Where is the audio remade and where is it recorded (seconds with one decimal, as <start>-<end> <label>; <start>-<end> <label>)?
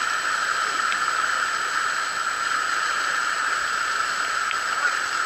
0.0-5.3 recorded